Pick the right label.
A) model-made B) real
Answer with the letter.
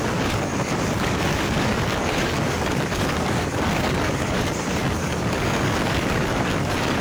A